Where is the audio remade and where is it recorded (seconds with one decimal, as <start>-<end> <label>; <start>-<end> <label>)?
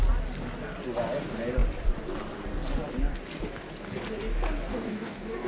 0.0-4.7 recorded; 4.7-5.5 remade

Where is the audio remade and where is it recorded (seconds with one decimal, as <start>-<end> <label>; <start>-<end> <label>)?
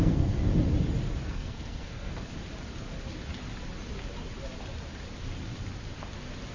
0.0-0.5 remade; 0.5-1.3 recorded; 1.3-2.3 remade; 2.3-6.5 recorded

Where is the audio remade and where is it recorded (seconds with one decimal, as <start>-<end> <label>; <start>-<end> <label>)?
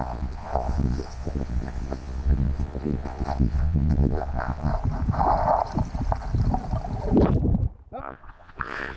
0.0-4.7 remade; 4.7-8.0 recorded; 8.0-9.0 remade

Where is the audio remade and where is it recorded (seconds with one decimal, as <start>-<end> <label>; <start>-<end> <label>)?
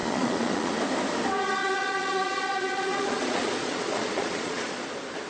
0.0-0.7 remade; 0.7-1.6 recorded; 1.6-4.8 remade; 4.8-5.3 recorded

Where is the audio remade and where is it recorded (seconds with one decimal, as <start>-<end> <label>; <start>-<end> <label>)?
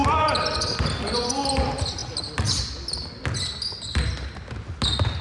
0.0-5.2 recorded